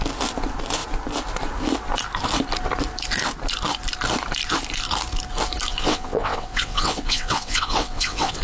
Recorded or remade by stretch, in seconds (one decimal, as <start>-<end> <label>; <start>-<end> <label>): 0.0-5.7 recorded; 5.7-8.4 remade